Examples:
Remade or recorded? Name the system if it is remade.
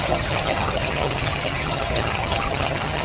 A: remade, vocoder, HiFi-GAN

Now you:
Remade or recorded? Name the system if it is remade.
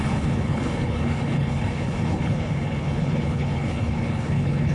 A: remade, codec, HILCodec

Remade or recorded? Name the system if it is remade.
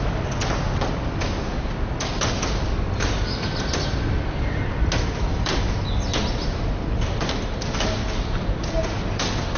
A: recorded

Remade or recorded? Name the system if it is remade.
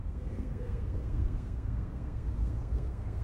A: remade, codec, SNAC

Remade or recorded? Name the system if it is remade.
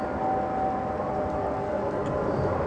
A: recorded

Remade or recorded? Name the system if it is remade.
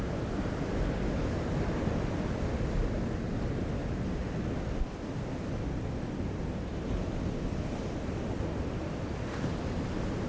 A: recorded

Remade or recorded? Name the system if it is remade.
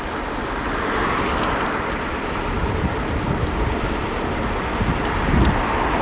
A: recorded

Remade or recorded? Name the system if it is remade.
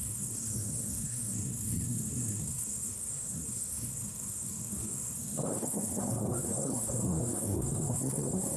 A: remade, codec, SNAC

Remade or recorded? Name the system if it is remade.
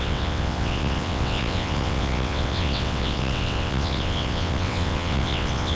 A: remade, vocoder, WaveNeXt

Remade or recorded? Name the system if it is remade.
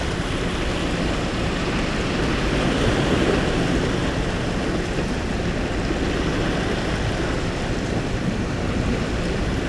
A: recorded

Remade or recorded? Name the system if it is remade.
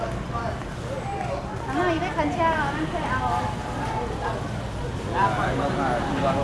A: recorded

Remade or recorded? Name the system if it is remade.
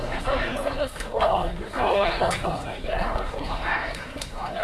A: remade, codec, SNAC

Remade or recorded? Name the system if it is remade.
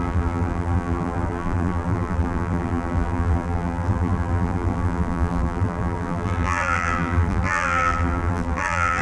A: remade, vocoder, BigVGAN v2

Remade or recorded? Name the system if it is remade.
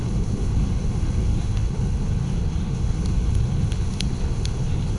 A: remade, codec, HILCodec